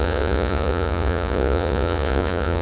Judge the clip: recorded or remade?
remade